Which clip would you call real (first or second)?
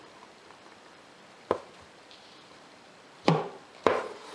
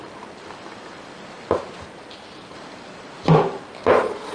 second